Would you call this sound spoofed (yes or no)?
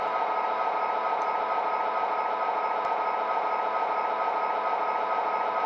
no